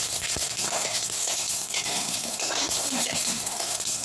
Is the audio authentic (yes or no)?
no